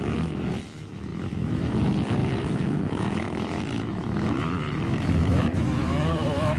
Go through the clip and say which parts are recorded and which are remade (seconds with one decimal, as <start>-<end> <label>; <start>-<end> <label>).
0.0-6.6 remade